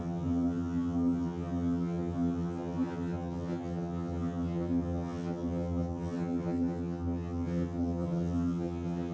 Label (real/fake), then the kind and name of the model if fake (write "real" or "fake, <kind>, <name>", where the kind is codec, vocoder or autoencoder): fake, vocoder, HiFi-GAN